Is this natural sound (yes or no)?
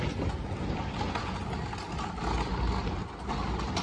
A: yes